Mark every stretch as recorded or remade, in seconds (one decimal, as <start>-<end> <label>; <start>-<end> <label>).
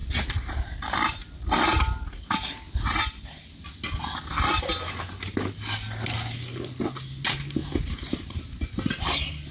0.0-9.5 recorded